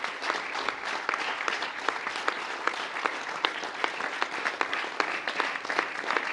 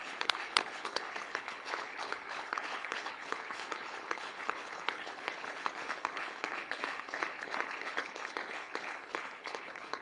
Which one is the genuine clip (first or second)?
first